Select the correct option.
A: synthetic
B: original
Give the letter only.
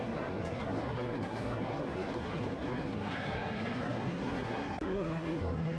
A